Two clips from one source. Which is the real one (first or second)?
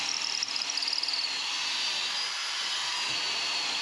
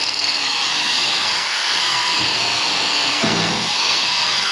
first